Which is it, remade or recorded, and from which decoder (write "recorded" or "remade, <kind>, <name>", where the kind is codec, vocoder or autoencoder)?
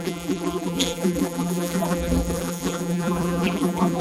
remade, vocoder, BigVGAN v2